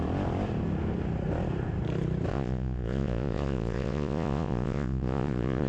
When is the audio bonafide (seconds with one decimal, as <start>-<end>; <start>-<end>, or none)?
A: 0.0-2.3

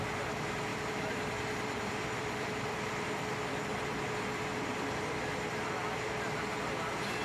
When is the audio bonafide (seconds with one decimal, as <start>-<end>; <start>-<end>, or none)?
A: 0.0-0.7; 5.0-7.2

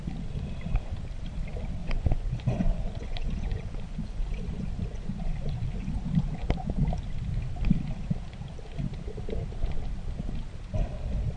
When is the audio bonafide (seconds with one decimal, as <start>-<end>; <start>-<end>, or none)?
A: 0.0-1.8; 6.0-11.4

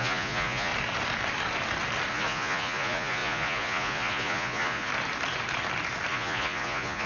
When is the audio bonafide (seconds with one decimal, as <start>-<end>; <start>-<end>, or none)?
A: 0.7-2.1; 4.9-6.1

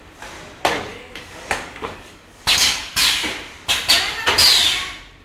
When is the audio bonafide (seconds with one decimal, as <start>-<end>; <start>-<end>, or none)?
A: 0.0-0.9; 2.9-5.2

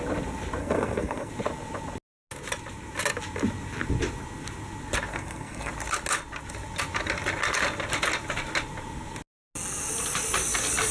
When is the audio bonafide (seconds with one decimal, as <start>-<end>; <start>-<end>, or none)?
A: 0.0-0.6; 1.3-5.1; 5.7-10.9

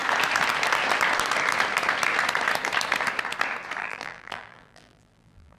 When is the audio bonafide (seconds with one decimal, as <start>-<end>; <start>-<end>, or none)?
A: 0.0-3.8

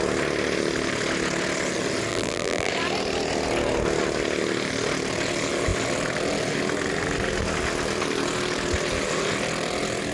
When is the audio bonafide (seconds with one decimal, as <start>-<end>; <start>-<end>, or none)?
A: 0.0-2.1; 2.7-10.1